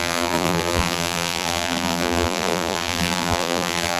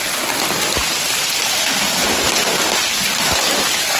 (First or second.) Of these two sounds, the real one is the second